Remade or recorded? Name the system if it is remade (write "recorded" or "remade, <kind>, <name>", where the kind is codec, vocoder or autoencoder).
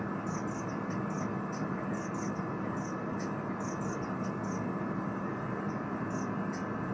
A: recorded